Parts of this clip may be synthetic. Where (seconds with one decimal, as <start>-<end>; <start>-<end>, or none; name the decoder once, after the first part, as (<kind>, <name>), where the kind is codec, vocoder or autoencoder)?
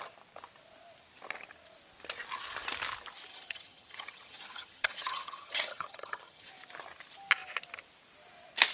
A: 3.3-6.5 (vocoder, HiFi-GAN)